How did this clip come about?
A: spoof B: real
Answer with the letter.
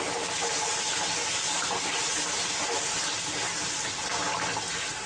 B